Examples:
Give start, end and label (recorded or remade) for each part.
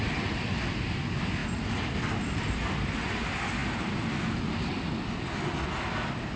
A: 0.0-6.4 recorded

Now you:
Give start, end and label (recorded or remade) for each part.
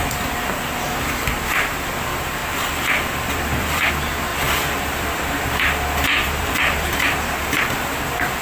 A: 0.0-2.4 recorded; 2.4-3.9 remade; 3.9-4.3 recorded; 4.3-7.6 remade; 7.6-8.4 recorded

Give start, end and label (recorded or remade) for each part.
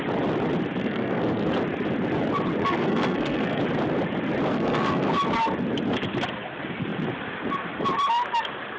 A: 0.0-0.8 recorded; 0.8-1.5 remade; 1.5-2.6 recorded; 2.6-3.6 remade; 3.6-4.5 recorded; 4.5-5.1 remade; 5.1-8.8 recorded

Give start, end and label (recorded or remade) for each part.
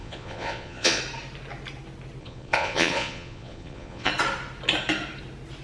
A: 0.0-1.0 remade; 1.0-2.2 recorded; 2.2-4.1 remade; 4.1-5.6 recorded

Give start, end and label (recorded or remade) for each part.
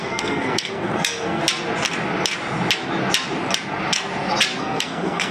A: 0.0-1.4 remade; 1.4-4.6 recorded; 4.6-5.3 remade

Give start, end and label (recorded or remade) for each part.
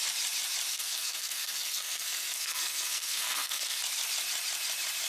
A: 0.0-0.7 recorded; 0.7-3.8 remade; 3.8-5.1 recorded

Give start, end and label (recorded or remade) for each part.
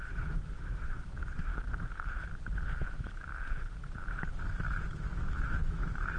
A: 0.0-1.5 remade; 1.5-2.8 recorded; 2.8-3.3 remade; 3.3-4.4 recorded; 4.4-6.2 remade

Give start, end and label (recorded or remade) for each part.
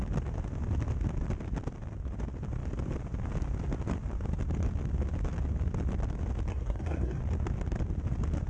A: 0.0-6.5 recorded; 6.5-7.2 remade; 7.2-8.5 recorded